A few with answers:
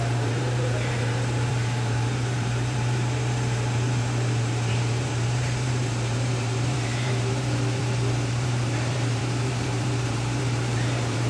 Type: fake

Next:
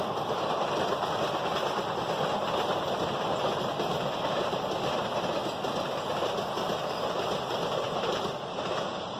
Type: real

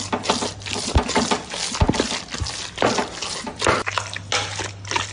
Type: real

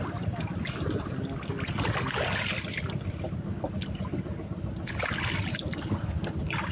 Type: real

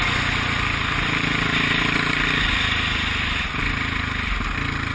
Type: real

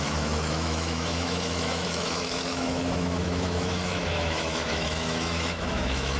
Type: fake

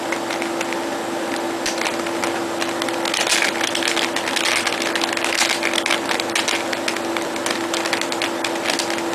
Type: real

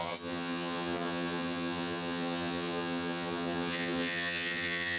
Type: fake